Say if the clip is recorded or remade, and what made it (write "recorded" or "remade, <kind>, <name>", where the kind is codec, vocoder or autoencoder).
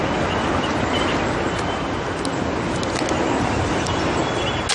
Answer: recorded